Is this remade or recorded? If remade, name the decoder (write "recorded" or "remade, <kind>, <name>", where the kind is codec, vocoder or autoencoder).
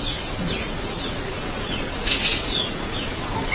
remade, vocoder, Vocos